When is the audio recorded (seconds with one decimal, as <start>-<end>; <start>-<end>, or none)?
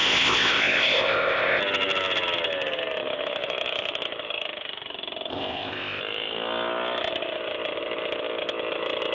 1.6-5.3; 6.0-9.1